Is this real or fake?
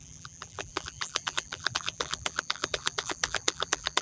fake